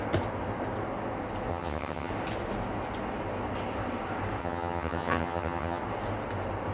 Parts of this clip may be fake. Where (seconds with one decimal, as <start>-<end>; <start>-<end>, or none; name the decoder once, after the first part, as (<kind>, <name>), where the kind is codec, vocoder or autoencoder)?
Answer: 1.5-2.1 (vocoder, HiFi-GAN); 4.4-5.8